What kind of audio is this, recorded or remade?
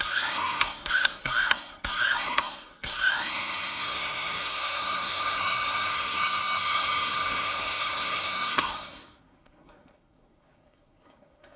remade